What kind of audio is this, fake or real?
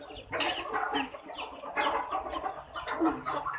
real